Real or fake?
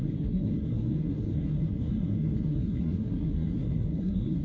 fake